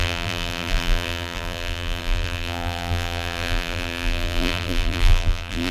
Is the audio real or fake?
fake